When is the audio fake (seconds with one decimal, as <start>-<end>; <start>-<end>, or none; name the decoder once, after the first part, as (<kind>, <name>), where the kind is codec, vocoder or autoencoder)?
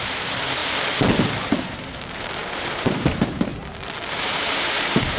0.0-0.6 (vocoder, BigVGAN v2); 1.6-3.5; 4.1-5.2